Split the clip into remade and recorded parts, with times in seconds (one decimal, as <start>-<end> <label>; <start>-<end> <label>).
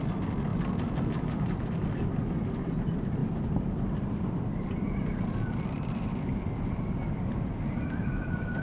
0.0-0.5 recorded; 0.5-2.2 remade; 2.2-3.2 recorded; 3.2-6.2 remade; 6.2-8.6 recorded